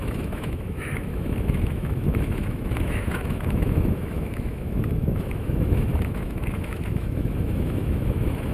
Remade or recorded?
remade